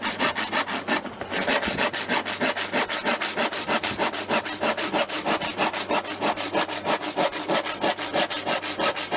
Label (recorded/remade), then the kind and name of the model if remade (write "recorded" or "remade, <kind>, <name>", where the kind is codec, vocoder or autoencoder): recorded